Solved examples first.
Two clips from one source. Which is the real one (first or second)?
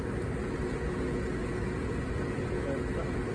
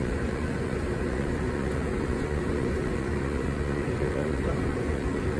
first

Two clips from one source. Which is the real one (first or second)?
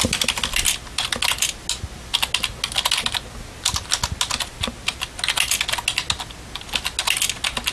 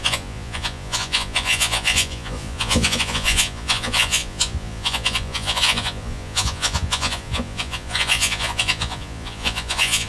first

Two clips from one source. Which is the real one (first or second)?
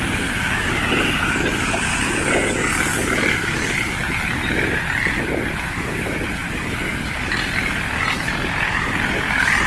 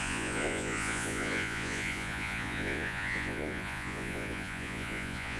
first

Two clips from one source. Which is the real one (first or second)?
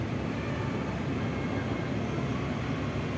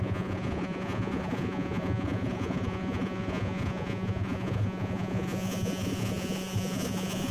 first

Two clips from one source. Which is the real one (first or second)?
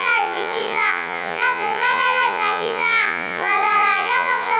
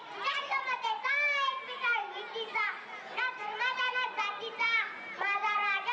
second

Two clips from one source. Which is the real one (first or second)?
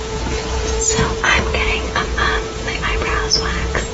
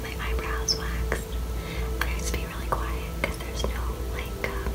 second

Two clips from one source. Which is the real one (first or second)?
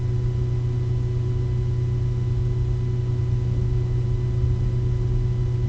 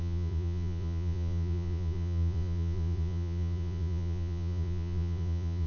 first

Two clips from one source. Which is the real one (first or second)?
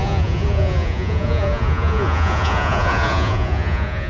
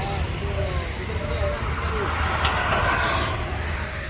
second